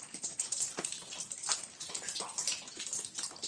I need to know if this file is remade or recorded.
recorded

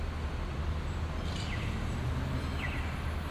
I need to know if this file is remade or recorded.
recorded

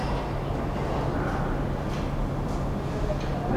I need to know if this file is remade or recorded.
recorded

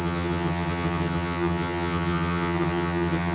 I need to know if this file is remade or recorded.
remade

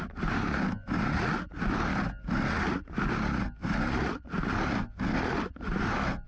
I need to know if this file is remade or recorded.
recorded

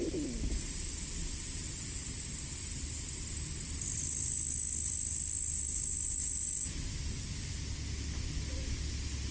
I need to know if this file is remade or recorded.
recorded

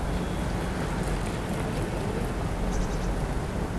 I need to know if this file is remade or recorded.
recorded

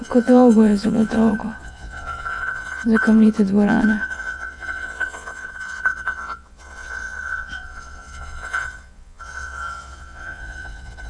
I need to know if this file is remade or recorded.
remade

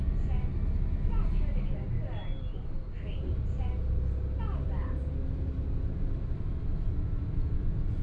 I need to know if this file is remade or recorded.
recorded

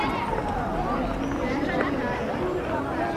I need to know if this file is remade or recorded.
recorded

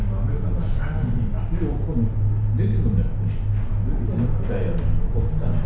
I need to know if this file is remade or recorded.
recorded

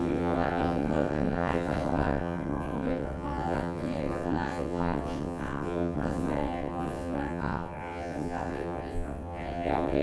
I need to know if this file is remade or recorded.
remade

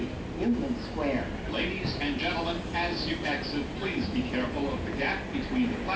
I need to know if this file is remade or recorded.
recorded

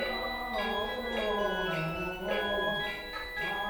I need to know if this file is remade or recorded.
recorded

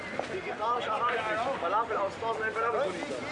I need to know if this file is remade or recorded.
recorded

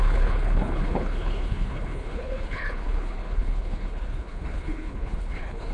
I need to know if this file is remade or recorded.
remade